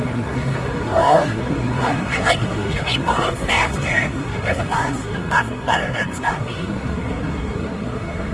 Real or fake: fake